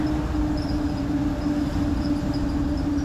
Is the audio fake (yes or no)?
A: no